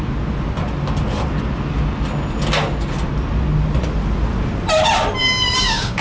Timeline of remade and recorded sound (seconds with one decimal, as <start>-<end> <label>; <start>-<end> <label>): 0.0-5.2 recorded; 5.2-6.0 remade